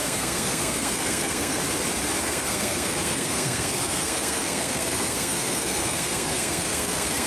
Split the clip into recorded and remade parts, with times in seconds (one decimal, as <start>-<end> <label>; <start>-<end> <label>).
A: 0.0-1.6 remade; 1.6-2.2 recorded; 2.2-7.3 remade